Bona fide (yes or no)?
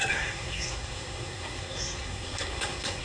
no